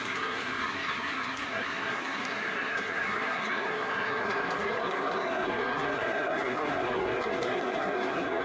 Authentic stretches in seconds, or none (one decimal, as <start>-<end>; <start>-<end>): none